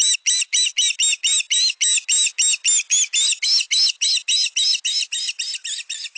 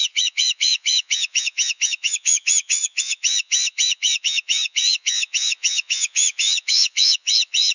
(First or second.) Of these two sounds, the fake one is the second